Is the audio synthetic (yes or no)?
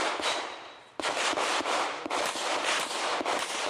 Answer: yes